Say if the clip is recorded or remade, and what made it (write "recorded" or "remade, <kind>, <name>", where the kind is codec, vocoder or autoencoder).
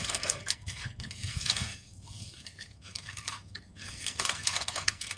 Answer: remade, codec, SNAC